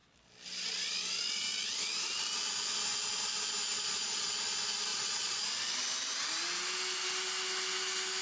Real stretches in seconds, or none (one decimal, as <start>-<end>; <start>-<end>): 0.0-3.7; 4.3-4.9; 5.5-8.2